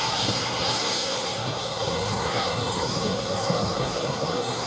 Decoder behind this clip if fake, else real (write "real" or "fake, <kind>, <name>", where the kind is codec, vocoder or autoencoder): fake, codec, SNAC